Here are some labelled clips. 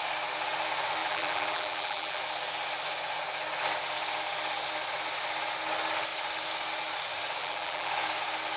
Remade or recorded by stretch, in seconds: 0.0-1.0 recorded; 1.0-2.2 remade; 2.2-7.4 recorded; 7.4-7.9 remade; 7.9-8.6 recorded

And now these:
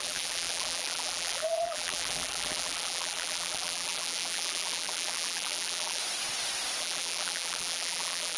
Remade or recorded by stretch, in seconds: 0.0-6.0 remade; 6.0-6.8 recorded; 6.8-8.4 remade

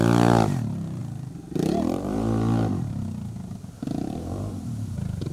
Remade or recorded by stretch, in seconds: 0.0-5.3 recorded

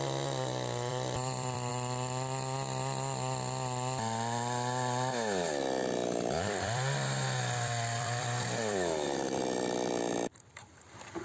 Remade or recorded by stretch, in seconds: 0.0-0.9 recorded; 0.9-1.7 remade; 1.7-6.0 recorded; 6.0-11.2 remade

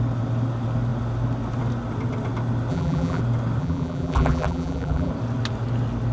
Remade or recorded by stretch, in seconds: 0.0-2.7 recorded; 2.7-3.2 remade; 3.2-3.6 recorded; 3.6-5.1 remade; 5.1-6.1 recorded